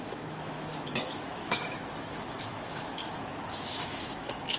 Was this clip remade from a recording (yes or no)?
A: yes